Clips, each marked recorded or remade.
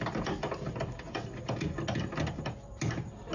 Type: recorded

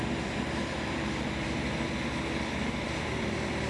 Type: remade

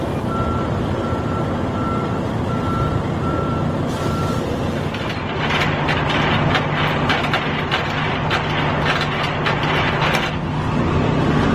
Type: recorded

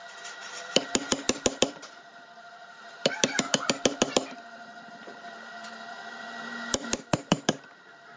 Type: remade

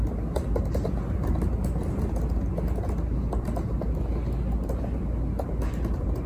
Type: recorded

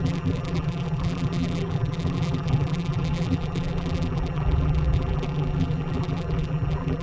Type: remade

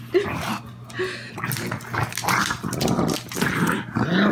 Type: recorded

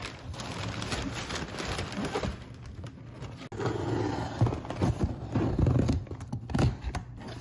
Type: recorded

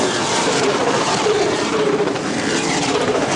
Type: remade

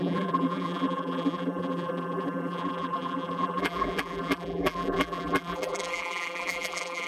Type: remade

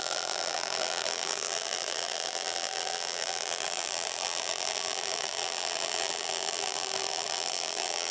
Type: remade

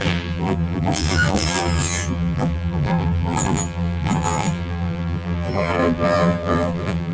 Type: remade